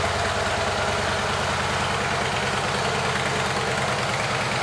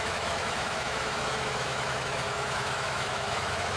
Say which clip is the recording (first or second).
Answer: first